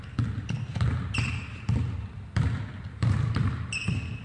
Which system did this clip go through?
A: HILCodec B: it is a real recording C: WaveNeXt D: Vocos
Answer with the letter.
B